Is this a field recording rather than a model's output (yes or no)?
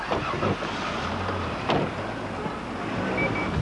yes